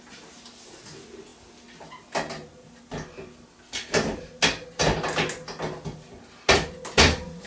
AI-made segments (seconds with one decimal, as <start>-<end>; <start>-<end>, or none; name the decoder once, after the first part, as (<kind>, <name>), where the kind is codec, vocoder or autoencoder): none